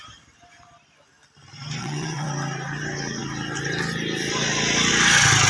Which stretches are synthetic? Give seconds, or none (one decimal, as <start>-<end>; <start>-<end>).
1.8-2.3